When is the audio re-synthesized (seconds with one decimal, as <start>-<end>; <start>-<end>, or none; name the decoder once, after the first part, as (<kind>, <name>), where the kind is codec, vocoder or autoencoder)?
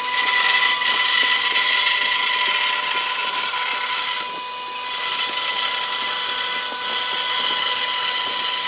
none